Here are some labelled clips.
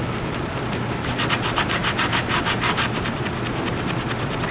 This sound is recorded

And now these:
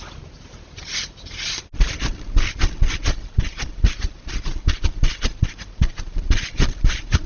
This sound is recorded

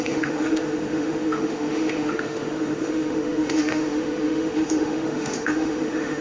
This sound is remade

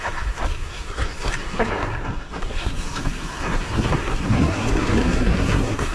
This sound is remade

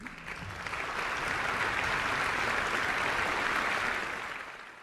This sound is recorded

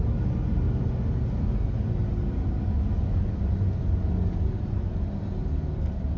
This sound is recorded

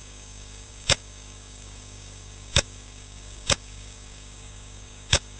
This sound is remade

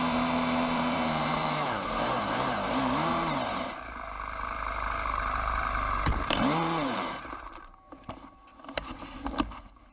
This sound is remade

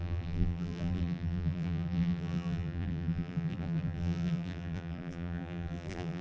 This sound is remade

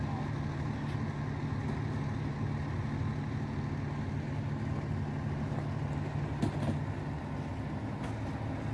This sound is recorded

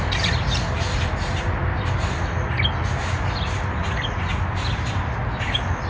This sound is recorded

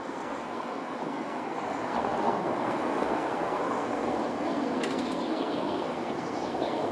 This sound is remade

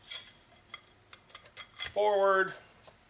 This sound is recorded